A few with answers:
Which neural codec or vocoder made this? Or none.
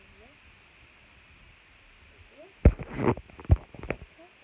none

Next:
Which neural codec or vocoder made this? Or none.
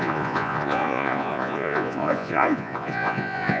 vocoder, Vocos